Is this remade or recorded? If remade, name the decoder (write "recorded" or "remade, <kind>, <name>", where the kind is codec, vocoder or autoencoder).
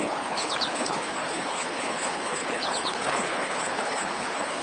remade, codec, HILCodec